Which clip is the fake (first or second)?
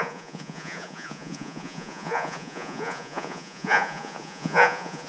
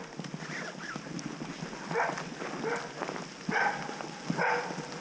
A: first